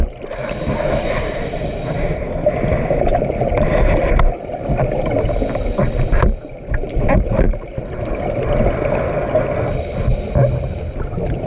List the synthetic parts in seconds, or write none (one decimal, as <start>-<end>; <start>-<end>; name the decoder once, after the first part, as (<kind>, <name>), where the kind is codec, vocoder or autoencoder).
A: 0.4-1.1 (vocoder, BigVGAN v2)